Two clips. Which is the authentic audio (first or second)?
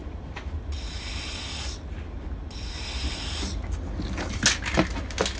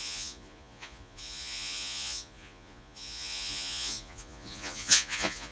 first